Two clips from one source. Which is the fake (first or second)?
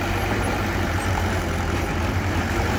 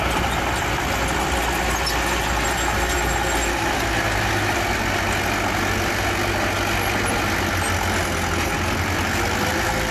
first